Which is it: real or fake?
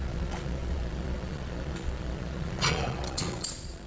fake